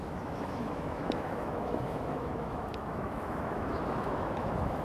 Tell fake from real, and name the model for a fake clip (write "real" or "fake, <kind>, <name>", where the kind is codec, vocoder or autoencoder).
fake, autoencoder, DAC-VAE